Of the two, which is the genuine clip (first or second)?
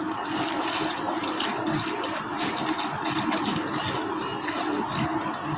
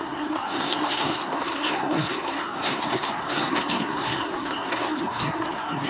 first